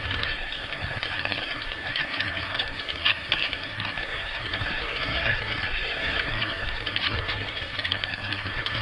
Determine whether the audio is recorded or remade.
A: remade